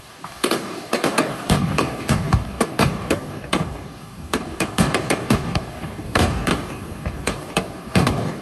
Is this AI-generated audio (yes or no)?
yes